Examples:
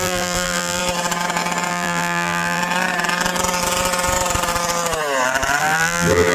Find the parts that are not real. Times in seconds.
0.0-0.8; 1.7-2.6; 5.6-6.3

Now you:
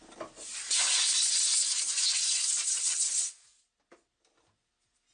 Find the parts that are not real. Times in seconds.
1.9-3.1

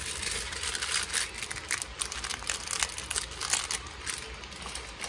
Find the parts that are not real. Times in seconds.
none